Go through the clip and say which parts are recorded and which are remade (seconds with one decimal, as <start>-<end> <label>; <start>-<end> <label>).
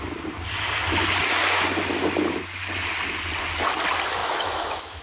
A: 0.0-4.2 recorded; 4.2-5.0 remade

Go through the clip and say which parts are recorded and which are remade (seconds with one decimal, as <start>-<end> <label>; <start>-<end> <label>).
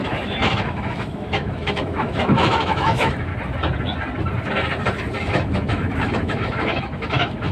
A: 0.0-3.3 remade; 3.3-5.2 recorded; 5.2-7.5 remade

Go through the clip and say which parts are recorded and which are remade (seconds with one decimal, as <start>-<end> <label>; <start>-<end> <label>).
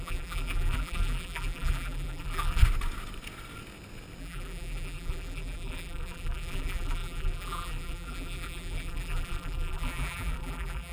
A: 0.0-2.6 remade; 2.6-4.2 recorded; 4.2-10.9 remade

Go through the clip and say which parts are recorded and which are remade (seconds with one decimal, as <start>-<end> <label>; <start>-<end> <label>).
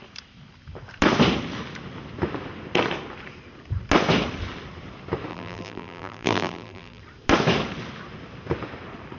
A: 0.0-5.3 recorded; 5.3-7.0 remade; 7.0-9.2 recorded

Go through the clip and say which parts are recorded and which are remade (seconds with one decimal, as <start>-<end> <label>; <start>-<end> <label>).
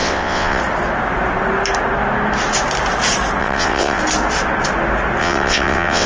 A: 0.0-0.6 remade; 0.6-3.4 recorded; 3.4-4.0 remade; 4.0-5.2 recorded; 5.2-6.1 remade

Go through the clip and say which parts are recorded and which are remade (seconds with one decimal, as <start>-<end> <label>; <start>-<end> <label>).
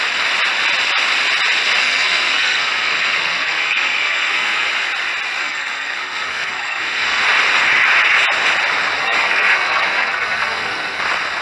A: 0.0-1.8 recorded; 1.8-4.7 remade; 4.7-5.4 recorded; 5.4-7.2 remade; 7.2-9.0 recorded; 9.0-11.0 remade; 11.0-11.4 recorded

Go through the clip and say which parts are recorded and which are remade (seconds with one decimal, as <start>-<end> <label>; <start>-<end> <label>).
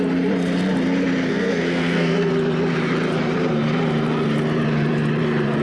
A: 0.0-1.3 recorded; 1.3-2.3 remade; 2.3-5.6 recorded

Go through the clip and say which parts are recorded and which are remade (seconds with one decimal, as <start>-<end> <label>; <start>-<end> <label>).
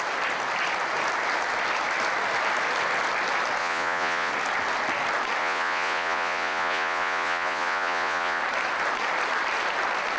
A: 0.0-3.6 recorded; 3.6-4.3 remade; 4.3-5.4 recorded; 5.4-8.4 remade; 8.4-10.2 recorded